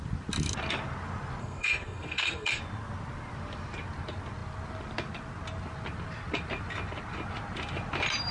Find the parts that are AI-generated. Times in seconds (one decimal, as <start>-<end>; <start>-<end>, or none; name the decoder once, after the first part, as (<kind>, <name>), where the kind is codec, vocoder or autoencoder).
1.4-2.6 (codec, SNAC)